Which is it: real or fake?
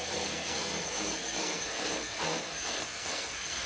fake